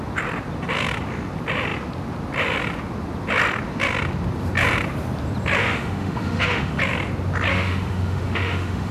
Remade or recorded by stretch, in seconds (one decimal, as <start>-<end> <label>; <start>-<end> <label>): 0.0-5.6 recorded; 5.6-6.8 remade; 6.8-7.5 recorded; 7.5-8.9 remade